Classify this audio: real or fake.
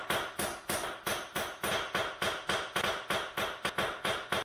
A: real